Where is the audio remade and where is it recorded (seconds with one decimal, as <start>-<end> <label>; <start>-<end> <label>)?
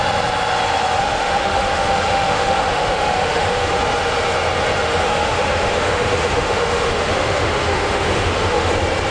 0.0-1.0 recorded; 1.0-3.8 remade; 3.8-4.8 recorded; 4.8-8.7 remade; 8.7-9.1 recorded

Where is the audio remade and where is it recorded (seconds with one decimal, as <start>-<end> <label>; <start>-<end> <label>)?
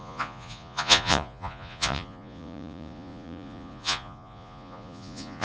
0.0-5.4 remade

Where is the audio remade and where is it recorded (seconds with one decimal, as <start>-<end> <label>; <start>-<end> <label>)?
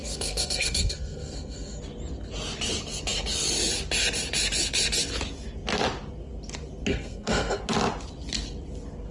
0.0-1.8 remade; 1.8-6.9 recorded; 6.9-7.6 remade; 7.6-9.1 recorded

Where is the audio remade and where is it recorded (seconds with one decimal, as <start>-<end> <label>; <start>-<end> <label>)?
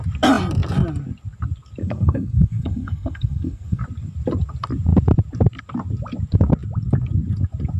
0.0-1.8 recorded; 1.8-3.8 remade; 3.8-7.8 recorded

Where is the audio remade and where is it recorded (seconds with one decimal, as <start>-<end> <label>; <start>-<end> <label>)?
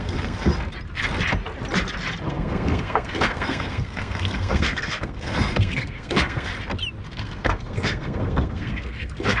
0.0-0.5 remade; 0.5-2.3 recorded; 2.3-6.5 remade; 6.5-7.1 recorded; 7.1-9.4 remade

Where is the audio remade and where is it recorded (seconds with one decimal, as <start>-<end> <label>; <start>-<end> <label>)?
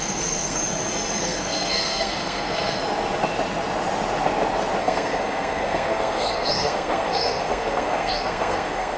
0.0-0.6 remade; 0.6-1.2 recorded; 1.2-2.8 remade; 2.8-4.8 recorded; 4.8-9.0 remade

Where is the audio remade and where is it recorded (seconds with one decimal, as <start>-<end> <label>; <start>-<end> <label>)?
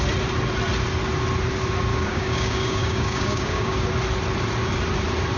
0.0-1.9 recorded; 1.9-3.9 remade; 3.9-5.4 recorded